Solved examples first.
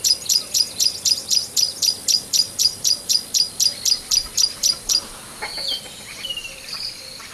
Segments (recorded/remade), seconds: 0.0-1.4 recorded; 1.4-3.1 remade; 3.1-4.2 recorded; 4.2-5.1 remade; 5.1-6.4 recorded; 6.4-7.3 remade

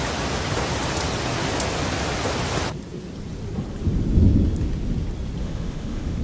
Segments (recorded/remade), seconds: 0.0-5.4 recorded; 5.4-6.2 remade

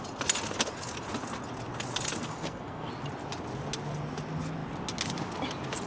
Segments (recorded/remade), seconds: 0.0-2.2 recorded; 2.2-2.9 remade; 2.9-5.9 recorded